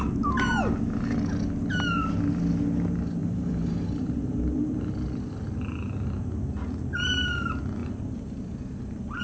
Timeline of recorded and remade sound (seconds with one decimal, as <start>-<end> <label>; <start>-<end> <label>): 0.0-3.2 recorded; 3.2-4.9 remade; 4.9-7.8 recorded; 7.8-9.2 remade